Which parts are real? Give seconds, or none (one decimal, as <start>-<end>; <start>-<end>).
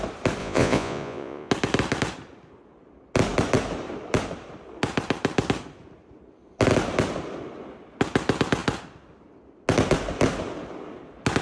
0.0-0.4; 1.5-11.4